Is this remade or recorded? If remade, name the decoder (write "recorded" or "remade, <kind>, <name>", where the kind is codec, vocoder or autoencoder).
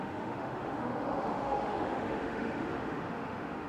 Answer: remade, autoencoder, DAC-VAE